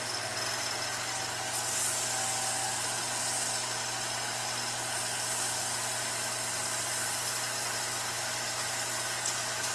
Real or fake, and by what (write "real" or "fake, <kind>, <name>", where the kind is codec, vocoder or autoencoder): real